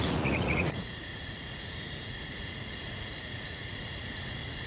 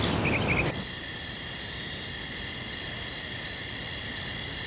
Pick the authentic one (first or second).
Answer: second